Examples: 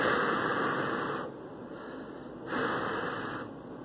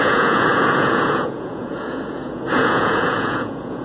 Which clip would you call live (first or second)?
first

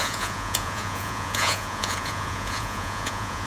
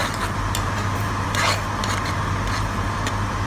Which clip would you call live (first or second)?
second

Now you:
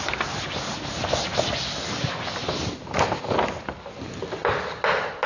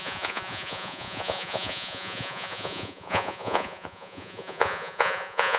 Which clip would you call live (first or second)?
first